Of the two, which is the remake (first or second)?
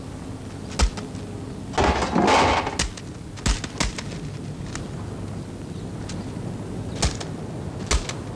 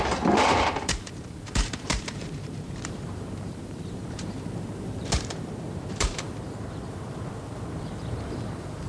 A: second